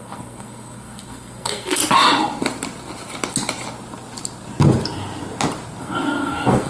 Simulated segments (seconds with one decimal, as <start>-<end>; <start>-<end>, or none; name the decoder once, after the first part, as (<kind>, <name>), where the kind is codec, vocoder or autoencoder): 0.0-1.8 (codec, SNAC); 5.8-6.7